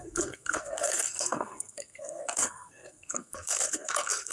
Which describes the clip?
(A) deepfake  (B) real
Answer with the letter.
A